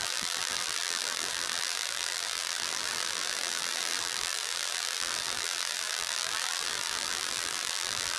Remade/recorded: remade